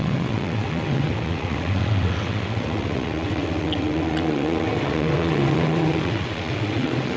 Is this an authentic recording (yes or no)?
no